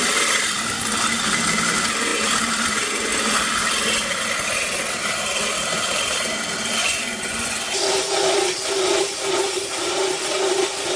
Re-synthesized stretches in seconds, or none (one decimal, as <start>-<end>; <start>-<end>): 6.8-7.6